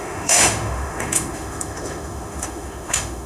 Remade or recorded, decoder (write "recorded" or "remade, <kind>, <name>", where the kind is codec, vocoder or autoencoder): remade, autoencoder, DAC-VAE